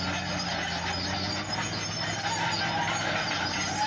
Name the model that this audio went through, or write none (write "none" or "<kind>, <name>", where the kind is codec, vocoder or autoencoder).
none